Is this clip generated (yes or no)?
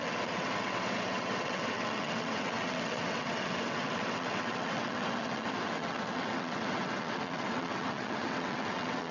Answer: yes